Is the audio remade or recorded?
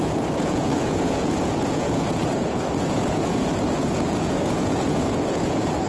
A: remade